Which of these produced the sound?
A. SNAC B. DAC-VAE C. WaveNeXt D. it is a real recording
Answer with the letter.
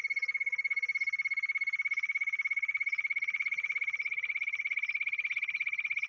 D